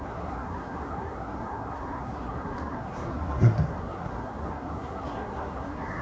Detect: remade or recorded remade